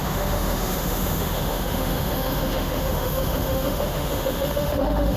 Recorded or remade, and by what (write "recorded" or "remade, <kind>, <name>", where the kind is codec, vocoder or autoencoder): remade, autoencoder, DAC-VAE